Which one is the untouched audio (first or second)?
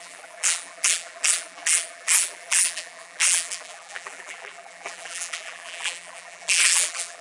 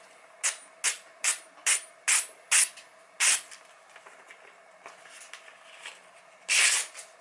second